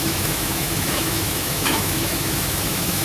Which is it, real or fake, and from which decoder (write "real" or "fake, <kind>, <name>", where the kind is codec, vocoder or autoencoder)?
fake, autoencoder, DAC-VAE